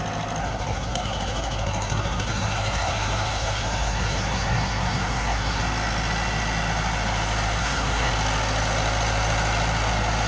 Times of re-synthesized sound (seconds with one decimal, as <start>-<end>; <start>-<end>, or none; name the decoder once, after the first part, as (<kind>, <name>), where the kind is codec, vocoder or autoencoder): 0.4-5.6 (codec, SNAC); 7.6-8.1